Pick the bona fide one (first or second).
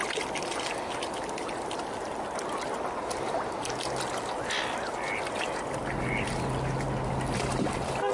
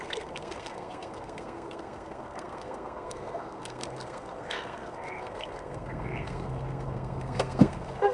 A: first